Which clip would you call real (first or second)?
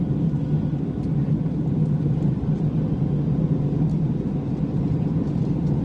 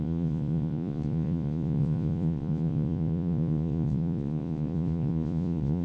first